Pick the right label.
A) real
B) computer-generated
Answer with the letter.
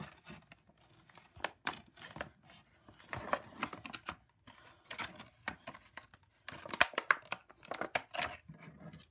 A